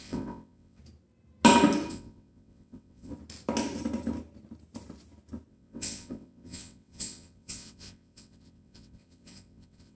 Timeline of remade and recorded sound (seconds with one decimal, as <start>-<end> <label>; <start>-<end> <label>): 0.0-0.8 remade; 0.8-1.9 recorded; 1.9-3.1 remade; 3.1-5.5 recorded; 5.5-10.0 remade

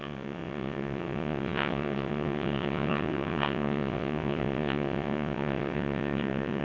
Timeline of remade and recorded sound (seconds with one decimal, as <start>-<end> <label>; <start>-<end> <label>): 0.0-6.6 remade

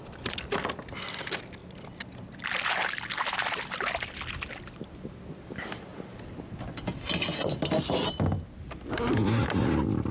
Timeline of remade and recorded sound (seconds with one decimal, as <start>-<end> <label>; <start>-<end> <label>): 0.0-10.1 recorded

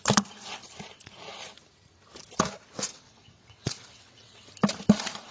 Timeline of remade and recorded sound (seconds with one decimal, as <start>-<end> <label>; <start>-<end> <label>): 0.0-2.9 recorded; 2.9-4.5 remade; 4.5-5.3 recorded